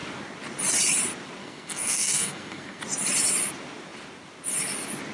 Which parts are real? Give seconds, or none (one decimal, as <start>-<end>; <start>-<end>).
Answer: 0.0-1.4; 2.8-5.1